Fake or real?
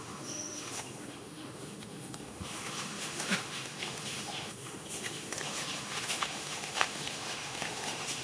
fake